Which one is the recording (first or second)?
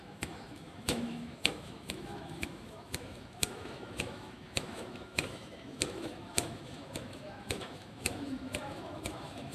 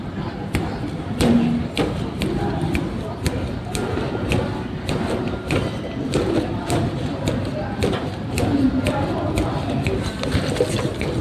second